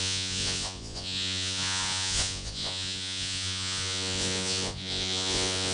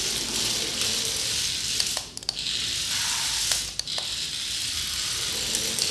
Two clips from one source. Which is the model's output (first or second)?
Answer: first